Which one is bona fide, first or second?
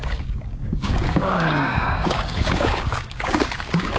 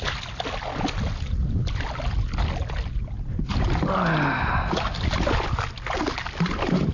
second